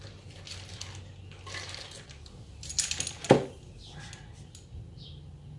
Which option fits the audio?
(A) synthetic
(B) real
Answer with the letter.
B